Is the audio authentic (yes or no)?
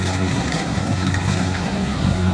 no